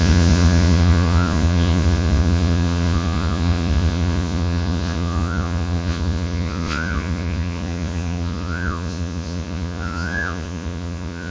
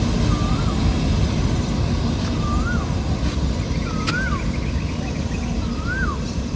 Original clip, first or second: second